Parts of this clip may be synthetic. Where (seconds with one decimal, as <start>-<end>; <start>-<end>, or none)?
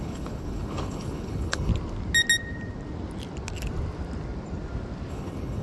0.0-1.7; 5.1-5.6